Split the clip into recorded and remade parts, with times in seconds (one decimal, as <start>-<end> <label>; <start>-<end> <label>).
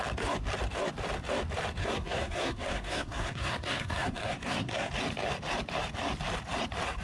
0.0-1.8 recorded; 1.8-4.9 remade; 4.9-7.0 recorded